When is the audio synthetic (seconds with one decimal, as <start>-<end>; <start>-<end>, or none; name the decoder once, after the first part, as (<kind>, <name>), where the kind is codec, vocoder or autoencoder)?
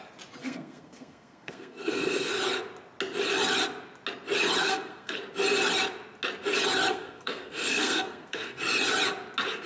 0.4-2.3 (codec, SNAC); 4.6-5.2; 6.9-8.6